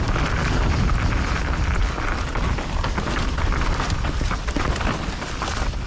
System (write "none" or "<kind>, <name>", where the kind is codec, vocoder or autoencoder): none